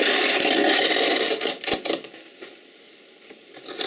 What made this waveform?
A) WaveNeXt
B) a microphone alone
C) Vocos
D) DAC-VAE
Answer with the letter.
B